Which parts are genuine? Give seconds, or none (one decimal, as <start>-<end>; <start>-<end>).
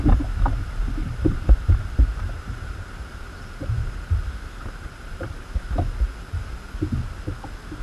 0.0-1.0; 5.7-7.8